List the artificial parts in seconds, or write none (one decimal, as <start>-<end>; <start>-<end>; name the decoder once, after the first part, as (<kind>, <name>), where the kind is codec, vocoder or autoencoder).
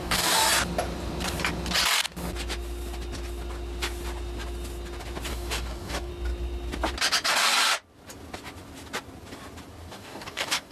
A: 0.0-0.4 (codec, DAC); 5.3-6.1; 9.9-10.7